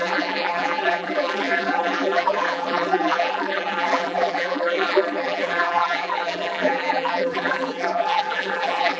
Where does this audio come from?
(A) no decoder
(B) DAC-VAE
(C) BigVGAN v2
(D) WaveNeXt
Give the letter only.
C